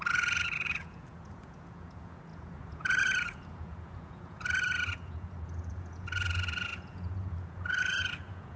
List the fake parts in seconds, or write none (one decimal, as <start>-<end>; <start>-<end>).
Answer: 0.0-8.6